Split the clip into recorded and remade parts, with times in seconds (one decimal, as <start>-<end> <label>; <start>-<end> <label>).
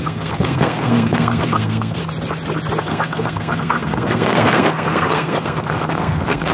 0.0-2.0 remade; 2.0-2.8 recorded; 2.8-6.5 remade